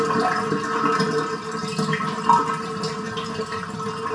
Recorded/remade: recorded